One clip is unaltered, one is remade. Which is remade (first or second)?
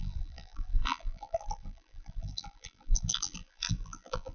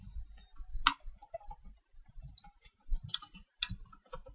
first